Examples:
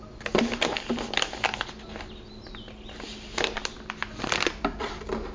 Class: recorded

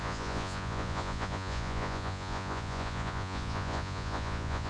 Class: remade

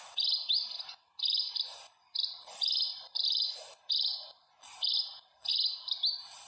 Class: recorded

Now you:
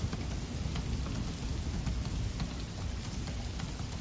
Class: recorded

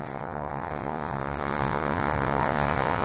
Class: remade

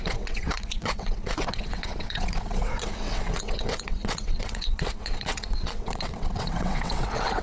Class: remade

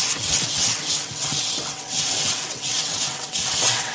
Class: remade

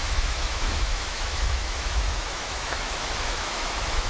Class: remade